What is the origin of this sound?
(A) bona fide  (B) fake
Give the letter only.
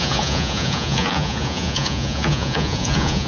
B